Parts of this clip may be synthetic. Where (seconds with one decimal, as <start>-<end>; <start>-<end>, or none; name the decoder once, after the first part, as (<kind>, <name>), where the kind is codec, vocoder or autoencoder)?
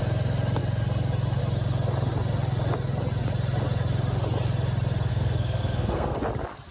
5.1-6.2 (codec, SNAC)